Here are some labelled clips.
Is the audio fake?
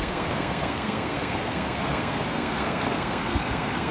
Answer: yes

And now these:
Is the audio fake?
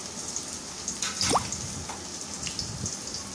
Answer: no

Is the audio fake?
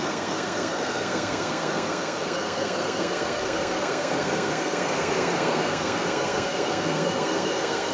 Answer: yes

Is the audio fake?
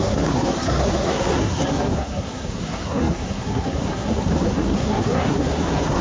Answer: yes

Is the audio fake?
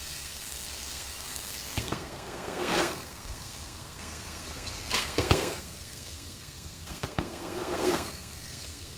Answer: yes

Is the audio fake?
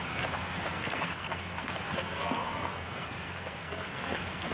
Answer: yes